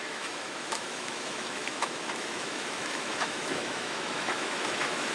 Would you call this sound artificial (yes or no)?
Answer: yes